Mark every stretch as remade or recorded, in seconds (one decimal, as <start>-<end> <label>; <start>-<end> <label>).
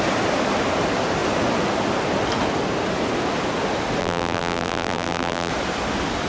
0.0-4.0 recorded; 4.0-5.5 remade; 5.5-6.3 recorded